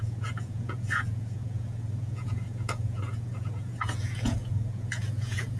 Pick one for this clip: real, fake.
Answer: fake